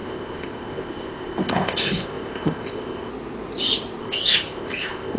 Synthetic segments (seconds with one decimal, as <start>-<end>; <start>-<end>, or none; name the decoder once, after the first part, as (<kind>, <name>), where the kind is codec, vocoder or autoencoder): 0.0-3.1 (codec, ZipCodec); 4.0-5.2